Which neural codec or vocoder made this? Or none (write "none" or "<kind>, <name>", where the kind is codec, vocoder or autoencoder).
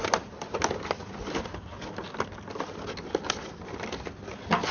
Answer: none